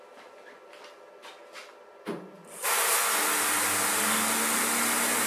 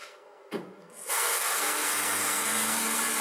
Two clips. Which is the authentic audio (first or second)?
first